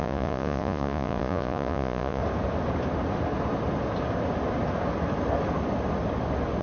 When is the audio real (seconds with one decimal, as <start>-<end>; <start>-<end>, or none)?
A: 2.2-6.6